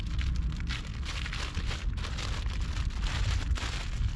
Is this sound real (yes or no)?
yes